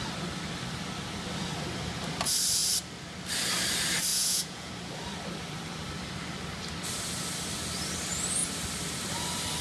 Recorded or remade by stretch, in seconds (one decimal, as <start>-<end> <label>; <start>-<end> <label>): 0.0-4.1 recorded; 4.1-4.7 remade; 4.7-9.6 recorded